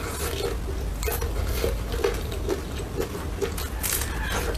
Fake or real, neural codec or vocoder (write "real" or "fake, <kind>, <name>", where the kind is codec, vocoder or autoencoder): real